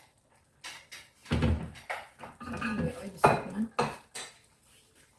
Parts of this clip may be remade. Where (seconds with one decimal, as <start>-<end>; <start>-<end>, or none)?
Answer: none